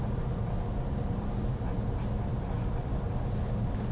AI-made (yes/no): no